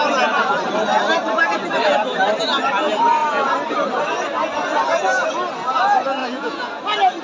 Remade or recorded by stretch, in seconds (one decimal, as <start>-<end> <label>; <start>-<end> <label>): 0.0-6.2 recorded; 6.2-6.8 remade; 6.8-7.2 recorded